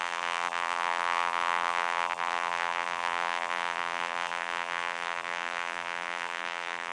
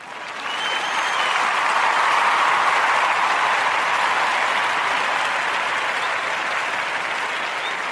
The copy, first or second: first